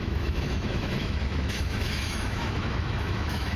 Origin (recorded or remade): remade